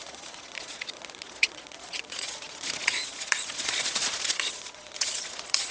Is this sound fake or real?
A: fake